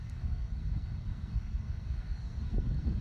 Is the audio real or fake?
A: fake